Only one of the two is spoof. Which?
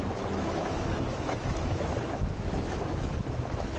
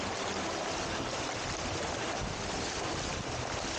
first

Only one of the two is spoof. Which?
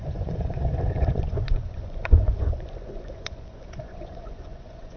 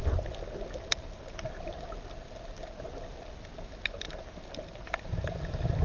first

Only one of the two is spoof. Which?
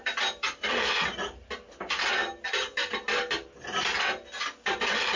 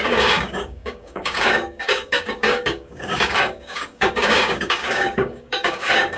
second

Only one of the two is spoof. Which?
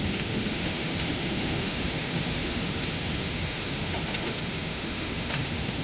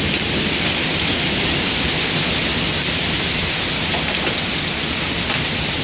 first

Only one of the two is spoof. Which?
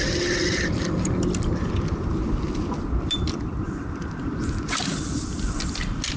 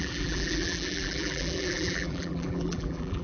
second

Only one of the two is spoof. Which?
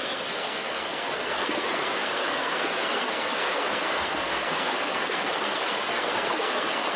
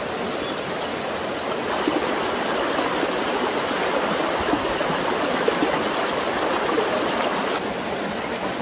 first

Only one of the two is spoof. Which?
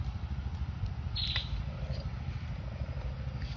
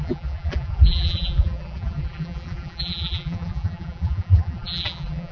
second